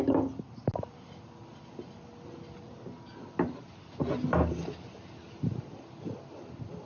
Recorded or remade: recorded